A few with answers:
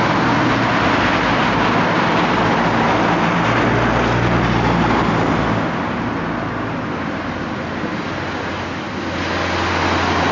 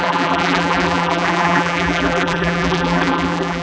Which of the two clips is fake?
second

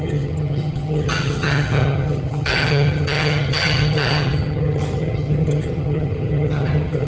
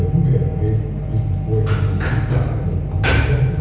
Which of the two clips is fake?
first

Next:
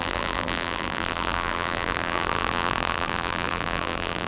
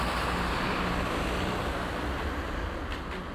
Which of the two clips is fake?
first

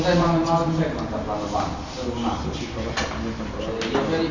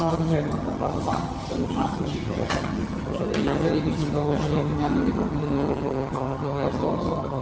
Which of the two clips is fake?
second